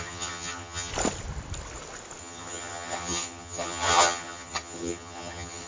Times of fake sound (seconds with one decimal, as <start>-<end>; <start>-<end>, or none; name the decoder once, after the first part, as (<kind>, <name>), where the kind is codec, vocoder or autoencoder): 0.0-0.9 (vocoder, HiFi-GAN); 2.2-5.7